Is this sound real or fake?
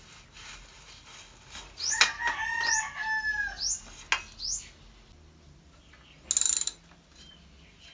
real